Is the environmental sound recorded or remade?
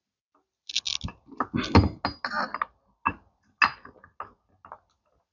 recorded